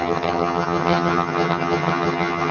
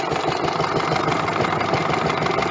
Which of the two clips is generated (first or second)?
first